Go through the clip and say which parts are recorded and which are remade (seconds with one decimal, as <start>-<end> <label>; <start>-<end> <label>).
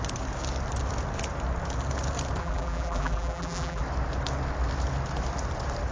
0.0-2.4 recorded; 2.4-3.8 remade; 3.8-5.9 recorded